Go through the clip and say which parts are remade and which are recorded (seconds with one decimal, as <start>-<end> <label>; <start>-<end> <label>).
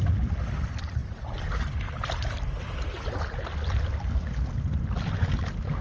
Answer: 0.0-5.8 recorded